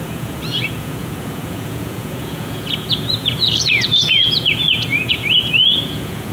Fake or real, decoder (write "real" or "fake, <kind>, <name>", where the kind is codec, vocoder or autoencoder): fake, vocoder, Vocos